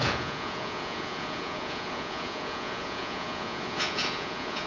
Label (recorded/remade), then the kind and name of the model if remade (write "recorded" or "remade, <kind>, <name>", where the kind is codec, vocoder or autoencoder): remade, vocoder, Vocos